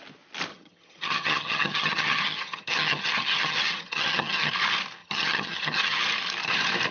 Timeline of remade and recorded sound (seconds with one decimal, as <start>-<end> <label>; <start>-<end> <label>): 0.0-0.5 recorded; 0.5-4.5 remade; 4.5-5.0 recorded; 5.0-6.0 remade; 6.0-6.9 recorded

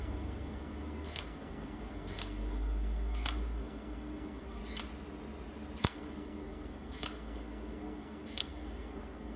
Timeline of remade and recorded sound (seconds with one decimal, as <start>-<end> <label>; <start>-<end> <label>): 0.0-4.6 remade; 4.6-5.8 recorded; 5.8-9.4 remade

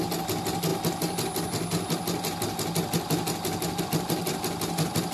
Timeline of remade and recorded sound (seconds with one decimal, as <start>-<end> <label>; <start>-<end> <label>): 0.0-5.1 recorded

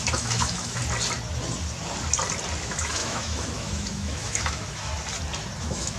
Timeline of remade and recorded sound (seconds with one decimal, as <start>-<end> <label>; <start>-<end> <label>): 0.0-0.8 remade; 0.8-2.6 recorded; 2.6-4.9 remade; 4.9-5.6 recorded; 5.6-6.0 remade

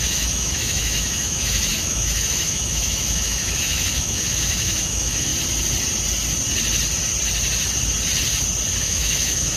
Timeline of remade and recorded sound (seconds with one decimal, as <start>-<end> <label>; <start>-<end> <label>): 0.0-5.3 remade; 5.3-8.8 recorded; 8.8-9.6 remade

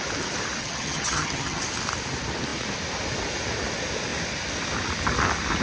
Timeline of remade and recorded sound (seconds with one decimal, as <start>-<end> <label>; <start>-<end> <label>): 0.0-0.6 recorded; 0.6-1.6 remade; 1.6-5.6 recorded